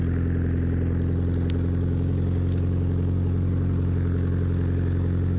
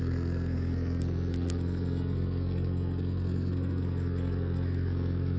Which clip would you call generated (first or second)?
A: second